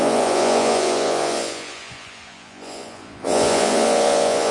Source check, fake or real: fake